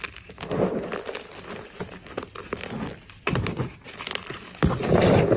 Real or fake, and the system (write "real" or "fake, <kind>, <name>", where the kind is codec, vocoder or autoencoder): real